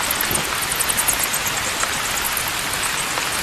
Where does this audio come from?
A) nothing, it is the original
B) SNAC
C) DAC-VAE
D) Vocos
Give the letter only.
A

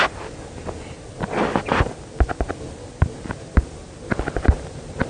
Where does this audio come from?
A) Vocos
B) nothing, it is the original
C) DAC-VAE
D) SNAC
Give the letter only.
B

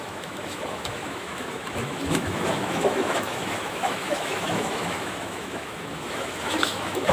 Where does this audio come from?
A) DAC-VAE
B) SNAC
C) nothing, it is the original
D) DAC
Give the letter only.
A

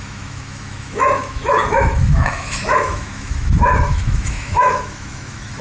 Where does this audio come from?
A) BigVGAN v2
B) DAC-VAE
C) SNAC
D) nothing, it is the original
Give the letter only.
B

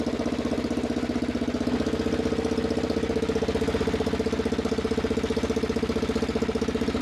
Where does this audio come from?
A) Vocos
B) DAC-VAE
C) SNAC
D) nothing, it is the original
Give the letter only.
D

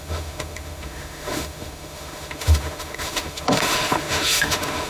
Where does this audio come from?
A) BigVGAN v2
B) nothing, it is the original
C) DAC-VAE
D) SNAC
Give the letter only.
C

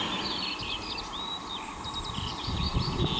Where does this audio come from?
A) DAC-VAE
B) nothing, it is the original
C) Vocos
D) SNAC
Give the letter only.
B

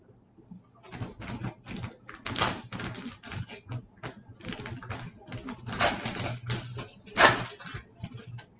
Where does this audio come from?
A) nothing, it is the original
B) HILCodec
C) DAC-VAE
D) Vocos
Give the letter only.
A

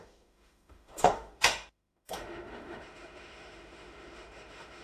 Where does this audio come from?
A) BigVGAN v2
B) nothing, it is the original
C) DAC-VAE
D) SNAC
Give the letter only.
C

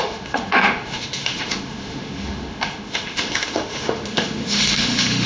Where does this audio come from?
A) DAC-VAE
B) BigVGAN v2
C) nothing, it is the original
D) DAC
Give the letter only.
A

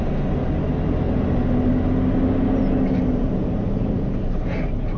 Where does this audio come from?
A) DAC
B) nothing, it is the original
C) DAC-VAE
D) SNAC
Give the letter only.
B